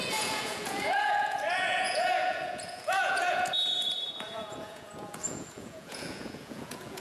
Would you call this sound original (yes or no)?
no